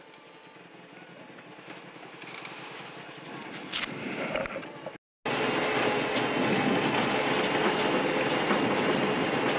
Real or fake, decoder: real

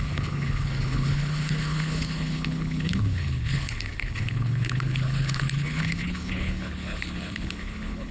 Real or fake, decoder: fake, codec, HILCodec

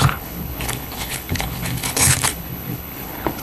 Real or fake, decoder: fake, codec, HILCodec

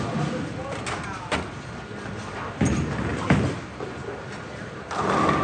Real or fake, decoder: real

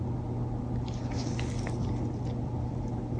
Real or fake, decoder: real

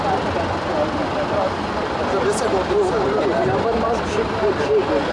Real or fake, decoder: real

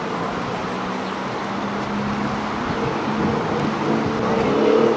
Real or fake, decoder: real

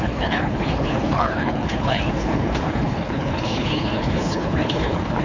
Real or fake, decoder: fake, codec, HILCodec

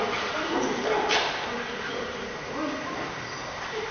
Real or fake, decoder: real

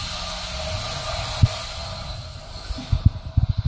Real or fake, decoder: real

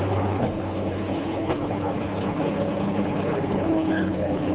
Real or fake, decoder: fake, codec, HILCodec